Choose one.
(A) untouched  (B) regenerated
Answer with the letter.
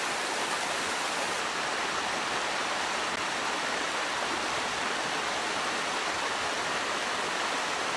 A